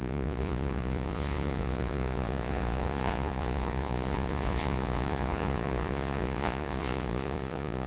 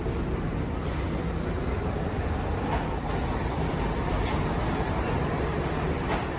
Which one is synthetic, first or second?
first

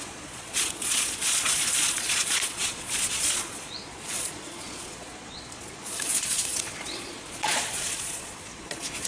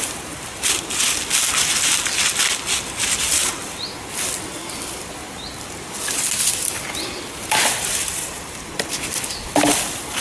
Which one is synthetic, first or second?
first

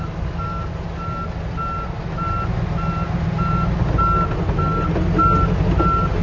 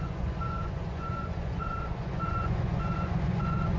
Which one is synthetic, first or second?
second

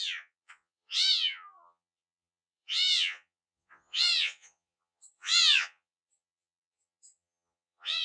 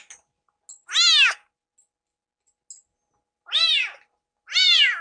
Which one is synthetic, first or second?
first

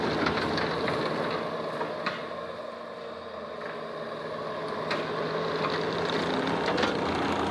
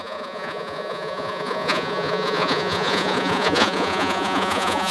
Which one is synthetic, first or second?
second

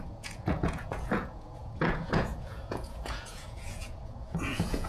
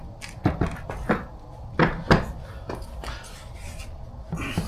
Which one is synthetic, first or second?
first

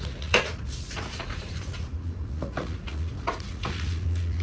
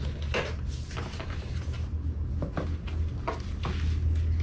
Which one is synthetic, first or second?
first